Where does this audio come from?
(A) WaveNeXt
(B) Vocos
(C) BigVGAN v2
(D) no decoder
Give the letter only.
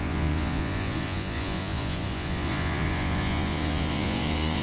B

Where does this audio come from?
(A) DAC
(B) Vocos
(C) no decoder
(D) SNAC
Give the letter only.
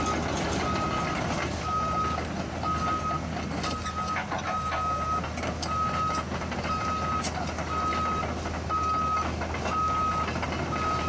C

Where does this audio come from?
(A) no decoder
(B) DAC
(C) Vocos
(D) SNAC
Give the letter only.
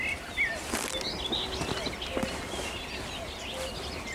A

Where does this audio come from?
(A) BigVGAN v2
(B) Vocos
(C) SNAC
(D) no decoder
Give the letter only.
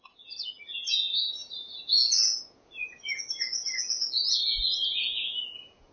B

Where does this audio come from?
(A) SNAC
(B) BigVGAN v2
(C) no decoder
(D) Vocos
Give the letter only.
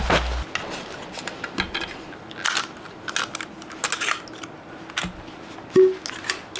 C